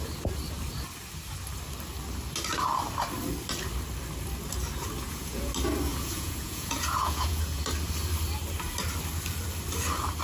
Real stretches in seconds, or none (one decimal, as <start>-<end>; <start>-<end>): 0.0-5.0; 5.5-5.9; 7.6-10.2